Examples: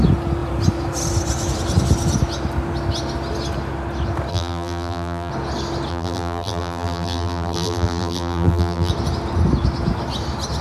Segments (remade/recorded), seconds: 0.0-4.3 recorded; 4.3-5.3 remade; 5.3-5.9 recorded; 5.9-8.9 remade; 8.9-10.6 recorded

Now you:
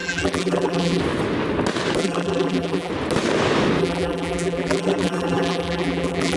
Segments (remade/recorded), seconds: 0.0-1.0 remade; 1.0-2.0 recorded; 2.0-2.9 remade; 2.9-3.8 recorded; 3.8-6.4 remade